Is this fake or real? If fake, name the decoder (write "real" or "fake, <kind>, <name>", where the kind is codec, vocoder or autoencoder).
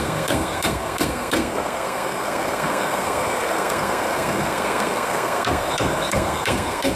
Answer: fake, codec, SNAC